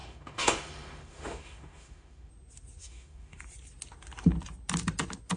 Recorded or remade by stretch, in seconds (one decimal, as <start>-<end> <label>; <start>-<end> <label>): 0.0-2.3 remade; 2.3-2.8 recorded; 2.8-3.4 remade; 3.4-5.4 recorded